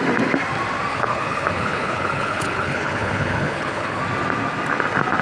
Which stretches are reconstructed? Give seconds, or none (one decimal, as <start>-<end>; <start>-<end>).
0.9-4.0